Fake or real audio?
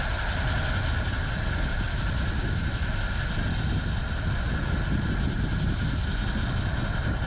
real